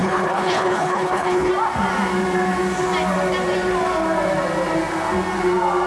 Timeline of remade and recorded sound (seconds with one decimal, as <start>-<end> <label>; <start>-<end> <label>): 0.0-1.5 remade; 1.5-5.9 recorded